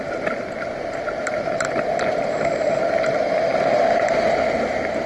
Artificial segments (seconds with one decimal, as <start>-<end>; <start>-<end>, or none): 2.3-2.8